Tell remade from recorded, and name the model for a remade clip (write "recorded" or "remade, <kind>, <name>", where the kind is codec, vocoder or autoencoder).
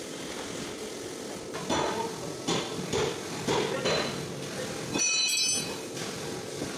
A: recorded